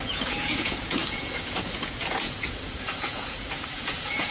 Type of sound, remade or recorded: remade